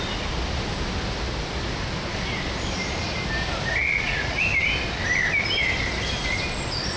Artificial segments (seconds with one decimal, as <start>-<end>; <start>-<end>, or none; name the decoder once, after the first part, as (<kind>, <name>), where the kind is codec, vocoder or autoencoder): 3.8-4.4 (vocoder, Vocos)